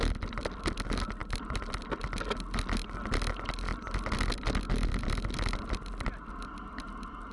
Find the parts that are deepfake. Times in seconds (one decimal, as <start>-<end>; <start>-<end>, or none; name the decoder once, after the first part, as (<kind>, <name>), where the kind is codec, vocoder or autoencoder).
none